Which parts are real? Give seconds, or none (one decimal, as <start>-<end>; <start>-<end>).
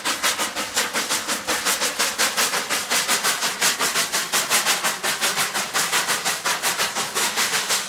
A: 0.0-7.2